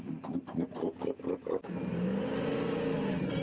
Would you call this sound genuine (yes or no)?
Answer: yes